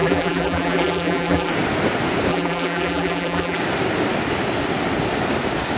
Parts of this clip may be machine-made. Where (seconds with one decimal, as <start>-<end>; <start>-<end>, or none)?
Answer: 0.0-1.5; 2.3-3.6